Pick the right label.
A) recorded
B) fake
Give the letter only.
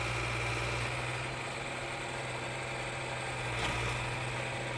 A